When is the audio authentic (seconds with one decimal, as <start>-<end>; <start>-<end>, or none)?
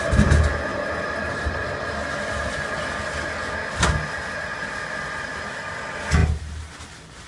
0.0-0.7; 1.7-7.3